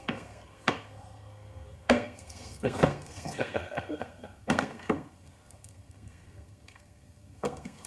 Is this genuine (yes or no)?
no